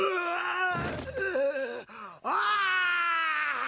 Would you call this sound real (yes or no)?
yes